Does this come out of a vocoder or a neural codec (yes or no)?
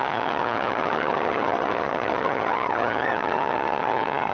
yes